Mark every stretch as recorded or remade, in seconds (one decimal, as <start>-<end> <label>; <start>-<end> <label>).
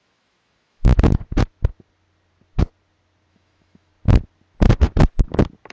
0.0-0.9 remade; 0.9-3.3 recorded; 3.3-3.9 remade; 3.9-5.7 recorded